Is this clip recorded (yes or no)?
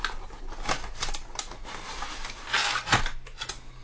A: yes